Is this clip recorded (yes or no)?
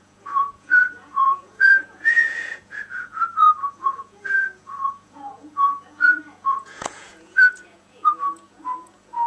no